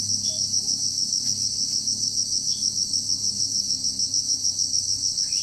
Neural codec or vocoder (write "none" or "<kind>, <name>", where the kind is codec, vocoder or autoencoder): autoencoder, DAC-VAE